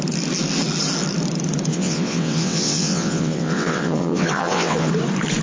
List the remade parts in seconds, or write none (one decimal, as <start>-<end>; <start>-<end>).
1.7-4.9